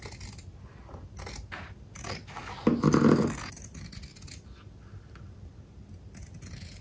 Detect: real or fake real